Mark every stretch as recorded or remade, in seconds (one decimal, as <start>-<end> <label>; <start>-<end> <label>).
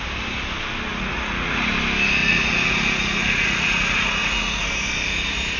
0.0-0.9 recorded; 0.9-1.7 remade; 1.7-2.2 recorded; 2.2-4.6 remade; 4.6-5.6 recorded